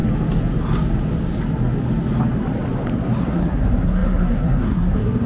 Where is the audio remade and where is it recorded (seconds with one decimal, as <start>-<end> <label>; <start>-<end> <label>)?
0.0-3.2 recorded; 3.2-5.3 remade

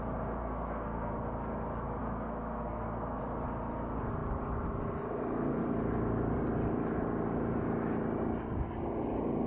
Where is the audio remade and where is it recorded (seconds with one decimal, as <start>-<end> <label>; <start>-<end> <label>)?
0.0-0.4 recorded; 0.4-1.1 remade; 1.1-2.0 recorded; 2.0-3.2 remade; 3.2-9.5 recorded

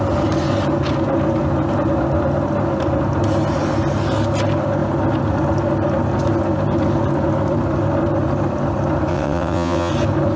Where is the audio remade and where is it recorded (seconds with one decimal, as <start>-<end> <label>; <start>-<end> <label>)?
0.0-9.1 recorded; 9.1-9.9 remade; 9.9-10.4 recorded

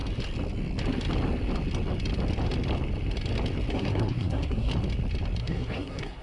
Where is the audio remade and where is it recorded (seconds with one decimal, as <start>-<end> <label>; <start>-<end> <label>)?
0.0-3.7 recorded; 3.7-4.7 remade; 4.7-5.4 recorded; 5.4-6.2 remade